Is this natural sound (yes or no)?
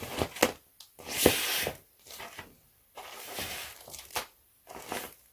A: yes